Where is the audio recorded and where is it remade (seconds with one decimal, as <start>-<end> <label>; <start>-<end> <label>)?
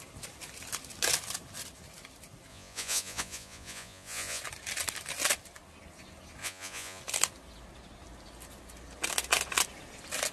0.0-2.5 recorded; 2.5-4.4 remade; 4.4-6.4 recorded; 6.4-7.0 remade; 7.0-10.3 recorded